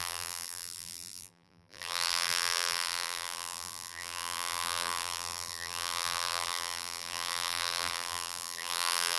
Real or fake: fake